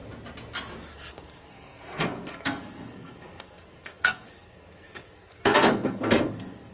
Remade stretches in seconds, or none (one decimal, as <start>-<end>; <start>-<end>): 0.9-6.7